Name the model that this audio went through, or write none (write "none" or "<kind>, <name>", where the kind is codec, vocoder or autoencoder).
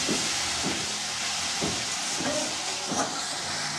none